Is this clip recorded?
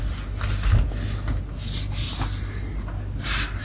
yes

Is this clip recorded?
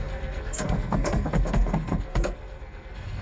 no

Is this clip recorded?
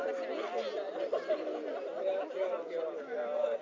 yes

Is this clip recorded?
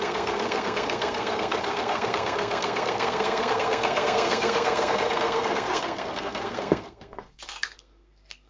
no